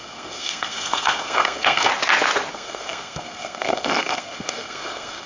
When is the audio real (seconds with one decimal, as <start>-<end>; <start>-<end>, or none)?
1.9-2.5